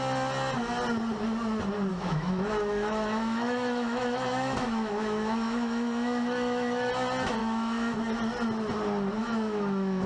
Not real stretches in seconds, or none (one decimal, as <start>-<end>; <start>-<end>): 1.9-6.9; 7.4-8.0; 9.2-10.1